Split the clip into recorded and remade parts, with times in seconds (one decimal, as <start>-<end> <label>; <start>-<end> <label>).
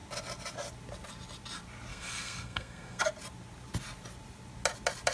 0.0-1.9 recorded; 1.9-3.0 remade; 3.0-5.1 recorded